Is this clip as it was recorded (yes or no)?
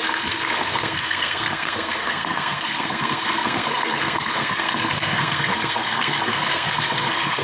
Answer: no